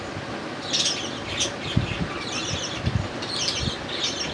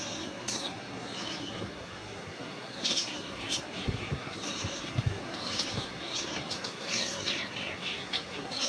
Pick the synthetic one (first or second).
second